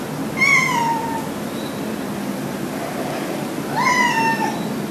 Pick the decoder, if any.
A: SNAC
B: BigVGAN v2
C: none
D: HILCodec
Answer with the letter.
C